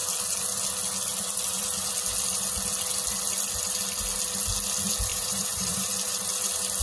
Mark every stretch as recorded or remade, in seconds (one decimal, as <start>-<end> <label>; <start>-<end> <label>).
0.0-5.1 recorded; 5.1-5.9 remade; 5.9-6.8 recorded